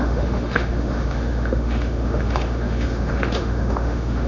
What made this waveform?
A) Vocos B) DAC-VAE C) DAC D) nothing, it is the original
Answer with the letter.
B